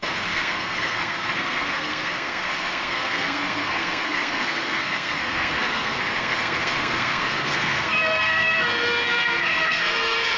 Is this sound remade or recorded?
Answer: remade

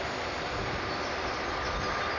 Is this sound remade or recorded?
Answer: recorded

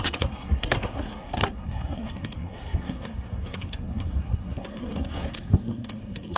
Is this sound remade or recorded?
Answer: remade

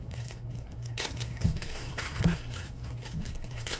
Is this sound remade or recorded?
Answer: remade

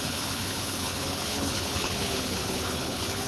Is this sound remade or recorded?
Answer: remade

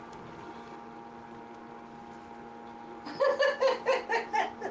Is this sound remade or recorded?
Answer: recorded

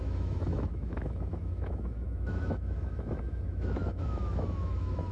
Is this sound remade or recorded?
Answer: remade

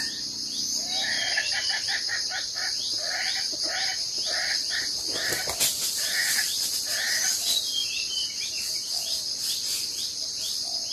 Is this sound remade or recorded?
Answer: recorded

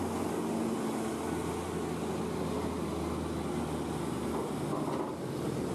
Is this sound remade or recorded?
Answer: recorded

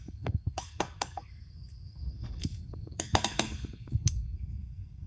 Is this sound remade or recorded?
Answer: remade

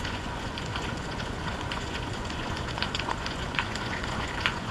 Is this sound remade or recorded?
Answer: remade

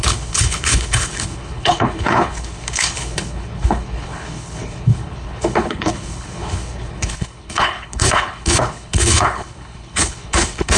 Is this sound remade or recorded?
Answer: remade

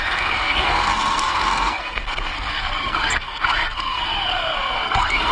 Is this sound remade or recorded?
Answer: remade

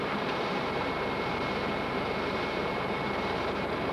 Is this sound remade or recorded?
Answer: remade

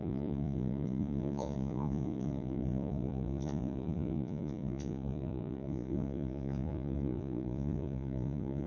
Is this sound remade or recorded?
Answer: remade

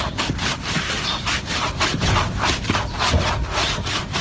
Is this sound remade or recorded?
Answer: remade